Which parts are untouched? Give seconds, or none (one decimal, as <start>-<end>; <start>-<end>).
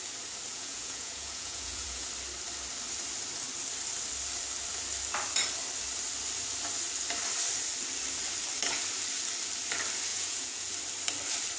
0.0-0.5; 2.1-10.1; 10.7-11.6